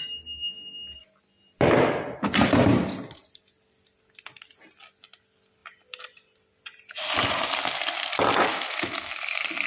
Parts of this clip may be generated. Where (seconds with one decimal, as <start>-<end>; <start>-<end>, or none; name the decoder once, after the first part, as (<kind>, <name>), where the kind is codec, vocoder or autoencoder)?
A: 8.5-9.1 (autoencoder, DAC-VAE)